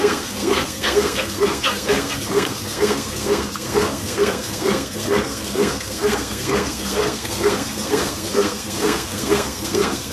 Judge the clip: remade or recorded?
remade